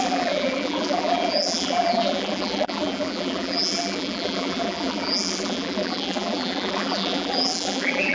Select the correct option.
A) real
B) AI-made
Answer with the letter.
B